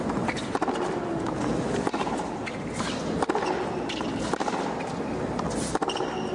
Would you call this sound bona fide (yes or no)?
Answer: yes